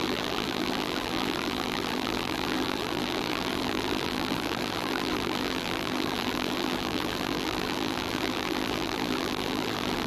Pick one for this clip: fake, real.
fake